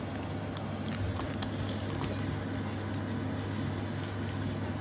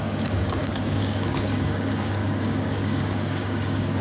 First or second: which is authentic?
first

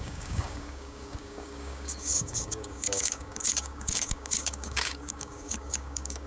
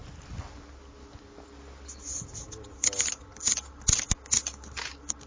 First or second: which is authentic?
second